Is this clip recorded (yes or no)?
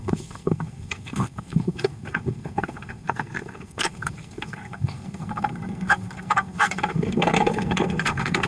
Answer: no